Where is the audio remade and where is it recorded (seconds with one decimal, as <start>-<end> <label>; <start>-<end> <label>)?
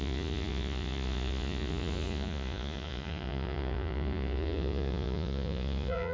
0.0-6.1 remade